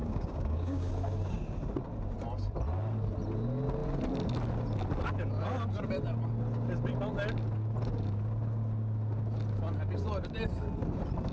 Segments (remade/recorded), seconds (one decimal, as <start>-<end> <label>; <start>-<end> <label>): 0.0-0.9 remade; 0.9-11.3 recorded